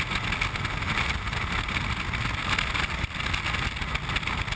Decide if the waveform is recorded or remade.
recorded